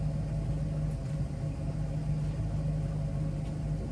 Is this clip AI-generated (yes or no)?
no